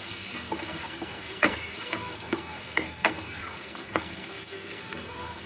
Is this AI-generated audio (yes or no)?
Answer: yes